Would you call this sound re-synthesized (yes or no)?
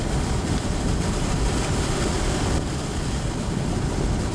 yes